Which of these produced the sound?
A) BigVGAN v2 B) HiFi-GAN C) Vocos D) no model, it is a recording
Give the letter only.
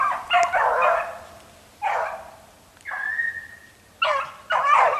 D